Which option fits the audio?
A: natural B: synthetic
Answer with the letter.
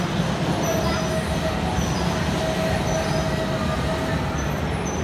A